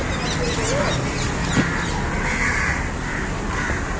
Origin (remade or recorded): recorded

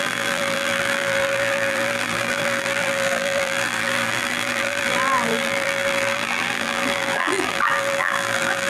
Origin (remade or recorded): remade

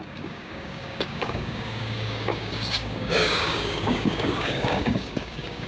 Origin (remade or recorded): remade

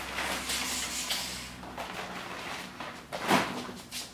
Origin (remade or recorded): recorded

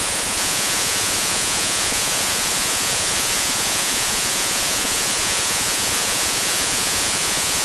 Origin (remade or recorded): remade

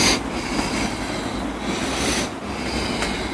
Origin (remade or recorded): recorded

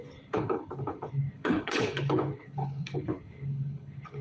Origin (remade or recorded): remade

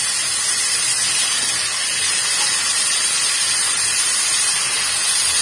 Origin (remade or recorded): recorded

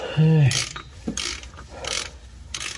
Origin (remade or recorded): recorded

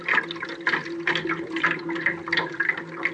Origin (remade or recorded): recorded